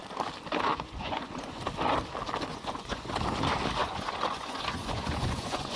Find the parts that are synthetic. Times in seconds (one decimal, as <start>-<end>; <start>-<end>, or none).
0.7-1.6; 2.5-3.1; 3.8-5.8